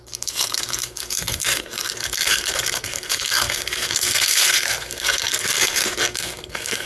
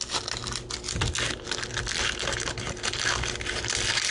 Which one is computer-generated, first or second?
first